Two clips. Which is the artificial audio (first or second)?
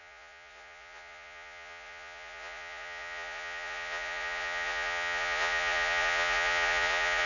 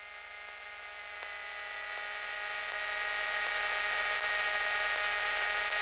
first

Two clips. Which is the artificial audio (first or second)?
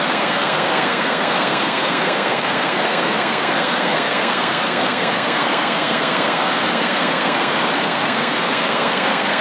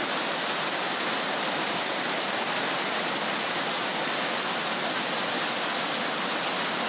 first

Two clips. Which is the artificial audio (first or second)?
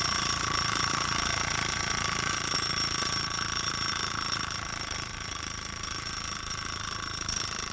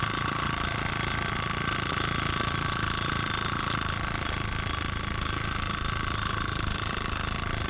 first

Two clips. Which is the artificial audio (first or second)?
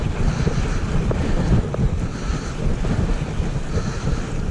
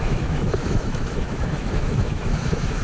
second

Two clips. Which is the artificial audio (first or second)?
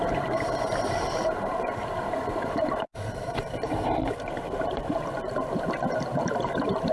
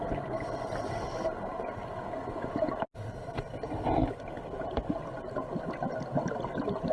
first